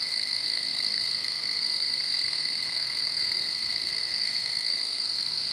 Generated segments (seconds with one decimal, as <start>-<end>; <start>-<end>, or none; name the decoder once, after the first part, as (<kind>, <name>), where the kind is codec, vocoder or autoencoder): 0.0-5.5 (codec, SNAC)